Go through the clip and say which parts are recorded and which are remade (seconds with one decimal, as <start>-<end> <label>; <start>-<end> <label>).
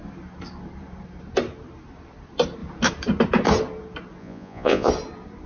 0.0-4.2 recorded; 4.2-4.9 remade; 4.9-5.5 recorded